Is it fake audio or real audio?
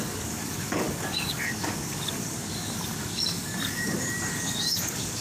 fake